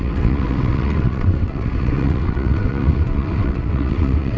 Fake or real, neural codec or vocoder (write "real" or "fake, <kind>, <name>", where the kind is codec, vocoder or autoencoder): fake, vocoder, WaveNeXt